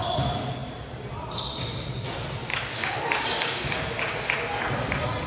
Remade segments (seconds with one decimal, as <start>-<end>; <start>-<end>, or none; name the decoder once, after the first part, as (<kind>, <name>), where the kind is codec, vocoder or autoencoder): 2.5-4.0 (codec, DAC)